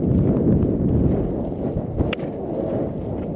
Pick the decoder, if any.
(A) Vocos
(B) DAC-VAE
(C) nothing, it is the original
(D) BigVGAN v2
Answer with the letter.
C